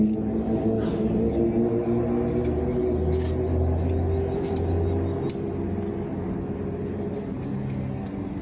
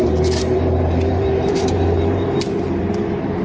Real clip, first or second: first